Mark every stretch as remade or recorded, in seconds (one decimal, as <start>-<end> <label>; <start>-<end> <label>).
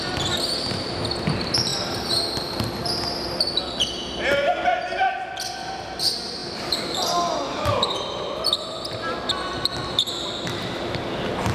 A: 0.0-6.4 recorded; 6.4-8.5 remade; 8.5-11.5 recorded